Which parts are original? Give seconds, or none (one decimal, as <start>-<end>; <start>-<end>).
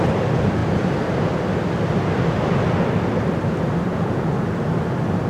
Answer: 0.0-3.9; 4.5-5.3